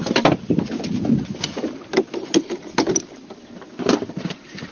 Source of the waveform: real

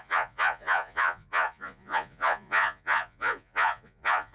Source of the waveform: fake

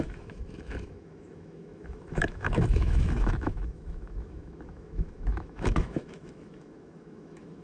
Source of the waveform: fake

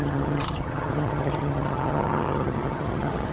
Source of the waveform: fake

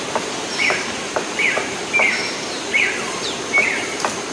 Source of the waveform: fake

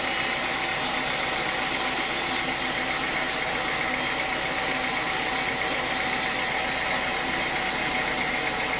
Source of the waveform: real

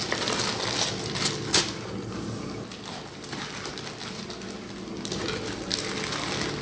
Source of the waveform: real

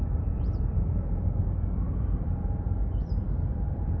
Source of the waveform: fake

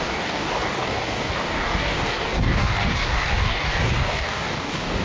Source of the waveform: fake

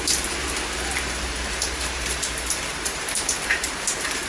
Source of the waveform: fake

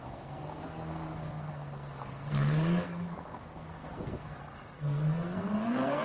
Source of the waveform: fake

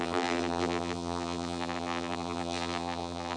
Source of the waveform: fake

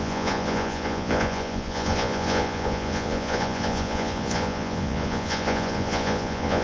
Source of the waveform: fake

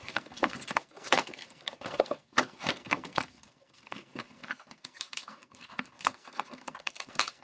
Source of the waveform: fake